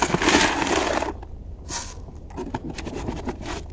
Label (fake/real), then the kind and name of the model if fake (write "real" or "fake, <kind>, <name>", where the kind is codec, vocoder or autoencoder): real